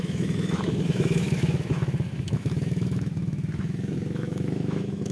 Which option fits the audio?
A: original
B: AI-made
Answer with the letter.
B